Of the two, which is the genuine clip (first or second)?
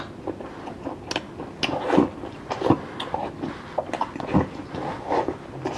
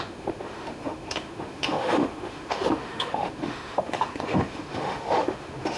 first